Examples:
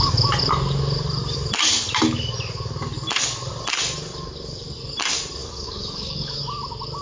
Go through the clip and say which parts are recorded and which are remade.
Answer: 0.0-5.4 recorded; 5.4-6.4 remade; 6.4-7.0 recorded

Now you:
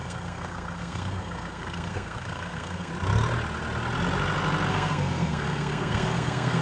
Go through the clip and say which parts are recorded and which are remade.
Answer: 0.0-2.9 remade; 2.9-4.7 recorded; 4.7-6.6 remade

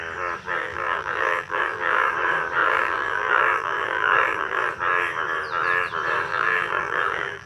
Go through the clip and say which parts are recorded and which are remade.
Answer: 0.0-0.6 recorded; 0.6-2.1 remade; 2.1-2.6 recorded; 2.6-4.7 remade; 4.7-6.3 recorded; 6.3-7.5 remade

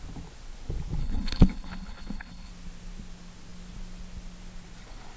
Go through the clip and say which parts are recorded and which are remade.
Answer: 0.0-1.0 recorded; 1.0-2.5 remade; 2.5-5.2 recorded